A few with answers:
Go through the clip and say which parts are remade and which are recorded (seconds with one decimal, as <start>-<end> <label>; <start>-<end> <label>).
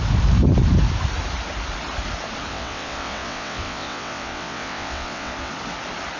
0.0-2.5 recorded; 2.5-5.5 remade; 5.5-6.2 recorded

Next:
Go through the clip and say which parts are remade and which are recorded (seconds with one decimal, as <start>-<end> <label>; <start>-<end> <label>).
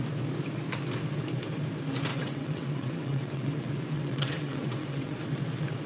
0.0-2.1 recorded; 2.1-5.2 remade; 5.2-5.9 recorded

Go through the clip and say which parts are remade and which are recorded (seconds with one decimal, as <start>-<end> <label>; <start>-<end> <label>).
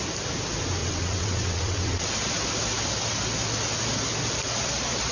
0.0-0.8 recorded; 0.8-2.1 remade; 2.1-5.1 recorded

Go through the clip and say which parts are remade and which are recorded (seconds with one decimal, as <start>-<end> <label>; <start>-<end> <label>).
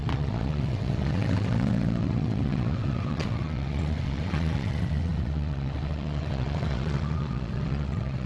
0.0-8.3 remade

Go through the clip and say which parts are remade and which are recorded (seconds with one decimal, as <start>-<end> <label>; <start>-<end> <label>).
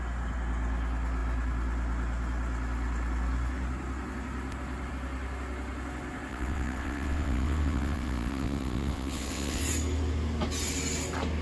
0.0-6.3 recorded; 6.3-9.6 remade; 9.6-11.4 recorded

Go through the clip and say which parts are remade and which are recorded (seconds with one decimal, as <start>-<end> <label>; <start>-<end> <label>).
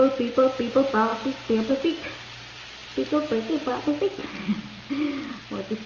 0.0-5.9 recorded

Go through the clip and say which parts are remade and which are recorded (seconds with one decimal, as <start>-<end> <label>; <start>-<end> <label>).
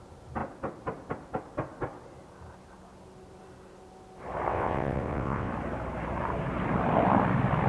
0.0-4.5 recorded; 4.5-5.5 remade; 5.5-7.7 recorded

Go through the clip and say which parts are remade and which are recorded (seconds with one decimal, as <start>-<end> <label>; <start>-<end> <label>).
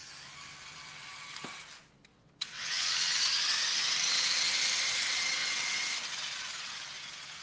0.0-2.1 recorded; 2.1-3.2 remade; 3.2-5.4 recorded; 5.4-6.1 remade; 6.1-7.4 recorded